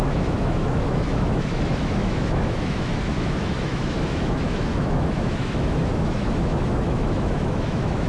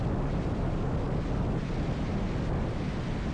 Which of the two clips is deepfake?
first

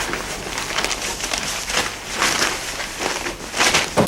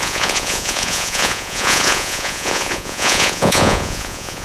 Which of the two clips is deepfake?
second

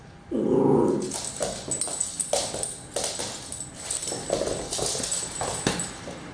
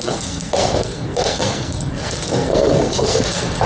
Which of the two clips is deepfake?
second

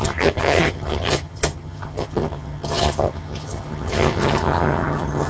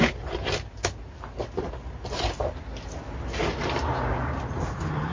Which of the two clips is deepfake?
first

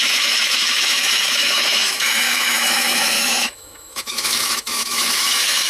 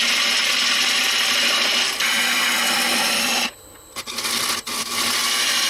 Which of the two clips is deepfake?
first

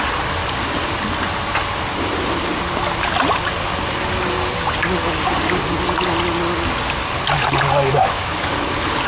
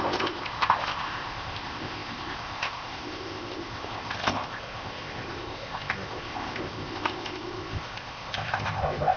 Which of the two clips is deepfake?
second